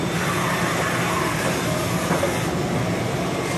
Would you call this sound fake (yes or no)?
yes